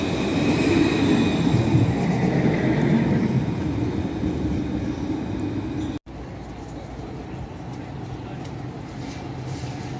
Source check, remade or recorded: recorded